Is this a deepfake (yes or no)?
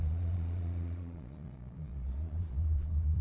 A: yes